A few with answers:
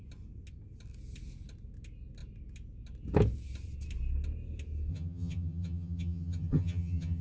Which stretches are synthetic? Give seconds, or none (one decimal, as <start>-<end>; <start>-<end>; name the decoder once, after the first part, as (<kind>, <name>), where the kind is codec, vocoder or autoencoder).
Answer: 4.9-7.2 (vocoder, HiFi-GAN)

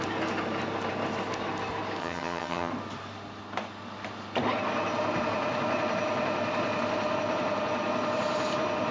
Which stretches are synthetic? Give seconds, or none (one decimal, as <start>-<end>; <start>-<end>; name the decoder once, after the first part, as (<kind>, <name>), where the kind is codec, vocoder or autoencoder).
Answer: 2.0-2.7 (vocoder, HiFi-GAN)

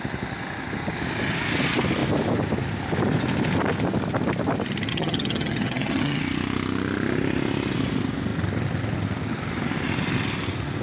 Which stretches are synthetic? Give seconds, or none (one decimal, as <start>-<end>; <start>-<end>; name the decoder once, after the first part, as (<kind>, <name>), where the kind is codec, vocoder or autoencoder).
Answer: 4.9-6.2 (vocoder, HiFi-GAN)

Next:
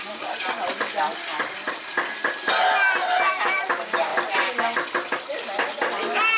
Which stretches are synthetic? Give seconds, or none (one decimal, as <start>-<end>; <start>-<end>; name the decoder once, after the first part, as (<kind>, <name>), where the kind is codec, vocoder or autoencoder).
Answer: none

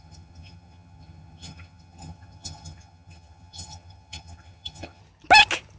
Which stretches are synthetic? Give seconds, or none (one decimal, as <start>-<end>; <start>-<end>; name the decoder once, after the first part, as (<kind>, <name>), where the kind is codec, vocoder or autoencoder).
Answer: 0.0-5.0 (vocoder, HiFi-GAN)

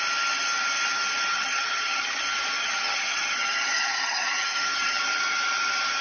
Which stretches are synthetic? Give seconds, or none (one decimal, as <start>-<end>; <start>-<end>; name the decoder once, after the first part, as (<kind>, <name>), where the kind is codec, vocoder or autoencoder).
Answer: 1.3-2.2 (vocoder, HiFi-GAN); 2.6-5.0

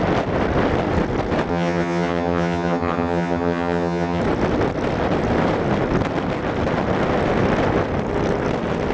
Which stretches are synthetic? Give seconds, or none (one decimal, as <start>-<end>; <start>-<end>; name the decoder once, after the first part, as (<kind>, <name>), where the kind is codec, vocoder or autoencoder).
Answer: 1.5-4.2 (vocoder, HiFi-GAN)

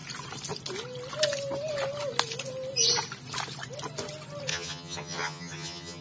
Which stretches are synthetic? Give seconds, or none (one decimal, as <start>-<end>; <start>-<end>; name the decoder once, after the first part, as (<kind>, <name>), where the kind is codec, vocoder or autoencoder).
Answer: 4.5-6.0 (vocoder, HiFi-GAN)